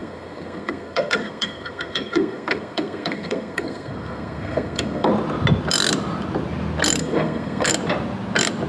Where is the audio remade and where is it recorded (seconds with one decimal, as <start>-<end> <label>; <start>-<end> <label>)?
0.0-5.1 remade; 5.1-7.0 recorded; 7.0-7.7 remade; 7.7-8.7 recorded

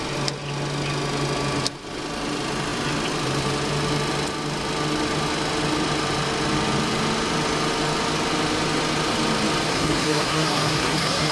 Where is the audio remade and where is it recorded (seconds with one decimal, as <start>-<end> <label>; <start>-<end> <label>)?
0.0-9.7 recorded; 9.7-11.3 remade

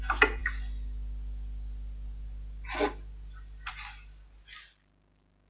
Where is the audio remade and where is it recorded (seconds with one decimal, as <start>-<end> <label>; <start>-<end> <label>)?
0.0-5.5 recorded